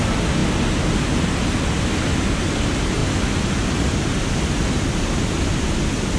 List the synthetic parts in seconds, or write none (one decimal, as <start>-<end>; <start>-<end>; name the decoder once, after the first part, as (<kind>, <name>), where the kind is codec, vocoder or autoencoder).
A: none